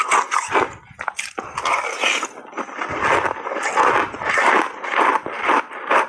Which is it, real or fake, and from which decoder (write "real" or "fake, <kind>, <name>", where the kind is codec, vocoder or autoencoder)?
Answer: real